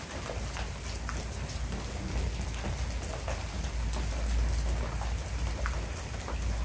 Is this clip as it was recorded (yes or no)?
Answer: yes